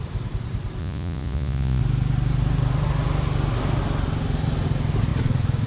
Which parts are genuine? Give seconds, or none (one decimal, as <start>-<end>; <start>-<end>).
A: 0.0-0.8; 1.8-5.7